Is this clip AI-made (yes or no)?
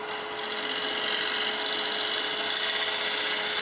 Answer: no